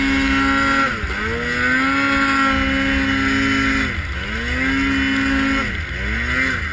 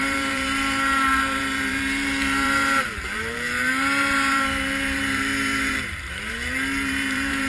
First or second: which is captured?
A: first